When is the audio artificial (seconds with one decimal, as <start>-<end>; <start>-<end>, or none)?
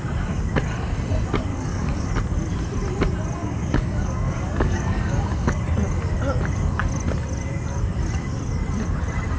1.5-2.1; 3.4-5.6